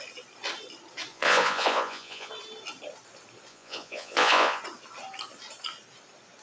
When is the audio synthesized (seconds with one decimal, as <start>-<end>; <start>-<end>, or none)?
1.1-2.3; 3.5-4.6